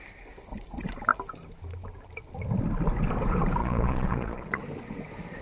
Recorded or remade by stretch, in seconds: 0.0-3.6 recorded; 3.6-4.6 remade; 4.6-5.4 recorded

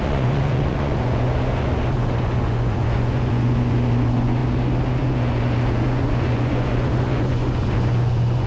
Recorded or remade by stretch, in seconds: 0.0-4.4 remade; 4.4-5.0 recorded; 5.0-8.5 remade

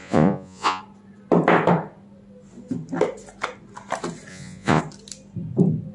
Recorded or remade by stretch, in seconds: 0.0-0.8 remade; 0.8-4.3 recorded; 4.3-4.8 remade; 4.8-5.9 recorded